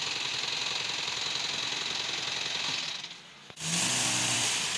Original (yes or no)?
yes